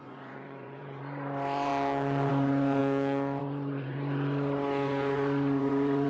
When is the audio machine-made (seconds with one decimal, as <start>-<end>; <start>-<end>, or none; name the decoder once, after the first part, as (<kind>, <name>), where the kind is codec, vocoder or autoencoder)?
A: 0.0-1.7 (vocoder, Vocos); 2.3-2.8; 3.4-6.1